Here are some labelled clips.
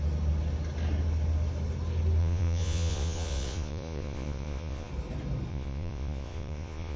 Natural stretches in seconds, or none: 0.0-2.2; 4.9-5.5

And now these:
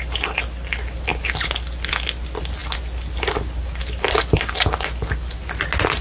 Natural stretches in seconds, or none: 0.0-6.0

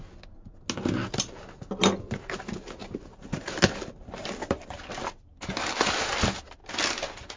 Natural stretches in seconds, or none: 0.0-2.8; 5.2-7.4

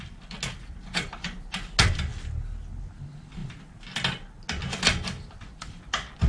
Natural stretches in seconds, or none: 0.0-6.3

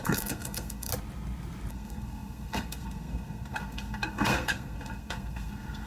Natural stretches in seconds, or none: 0.9-1.7

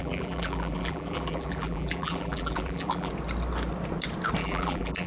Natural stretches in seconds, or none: 3.1-4.4

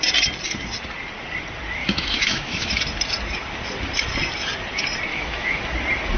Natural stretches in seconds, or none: 0.0-1.8; 2.7-5.1; 5.6-6.2

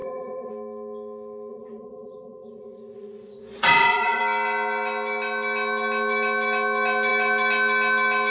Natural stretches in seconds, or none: 0.5-1.5; 4.2-8.3